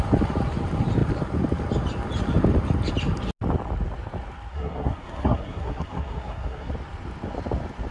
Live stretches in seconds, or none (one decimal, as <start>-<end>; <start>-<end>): 0.0-4.5; 6.7-7.9